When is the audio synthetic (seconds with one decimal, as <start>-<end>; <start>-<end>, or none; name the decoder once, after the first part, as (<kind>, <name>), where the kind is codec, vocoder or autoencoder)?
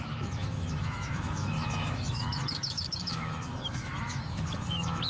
0.0-5.1 (autoencoder, DAC-VAE)